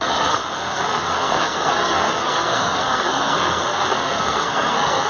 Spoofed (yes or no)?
yes